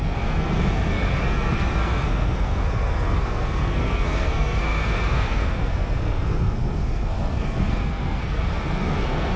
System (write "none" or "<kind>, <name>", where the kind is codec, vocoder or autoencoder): codec, SNAC